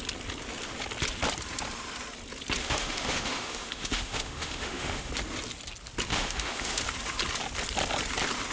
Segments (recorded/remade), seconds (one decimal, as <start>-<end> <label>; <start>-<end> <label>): 0.0-2.6 recorded; 2.6-5.1 remade; 5.1-6.1 recorded; 6.1-6.8 remade; 6.8-8.5 recorded